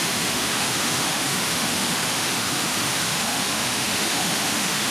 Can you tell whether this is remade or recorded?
remade